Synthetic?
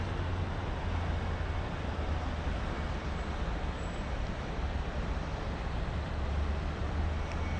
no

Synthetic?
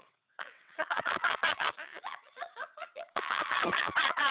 yes